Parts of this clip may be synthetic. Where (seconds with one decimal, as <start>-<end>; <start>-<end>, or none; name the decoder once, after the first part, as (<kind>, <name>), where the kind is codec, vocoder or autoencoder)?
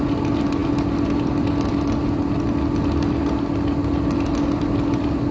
none